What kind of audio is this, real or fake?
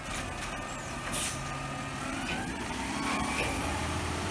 real